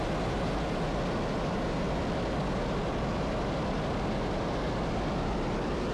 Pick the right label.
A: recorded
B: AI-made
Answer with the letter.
A